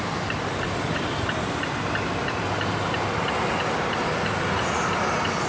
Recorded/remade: recorded